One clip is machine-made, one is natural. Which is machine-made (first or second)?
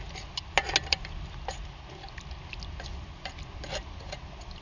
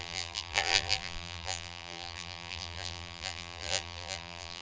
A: second